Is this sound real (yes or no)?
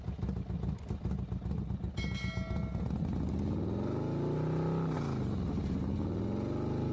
yes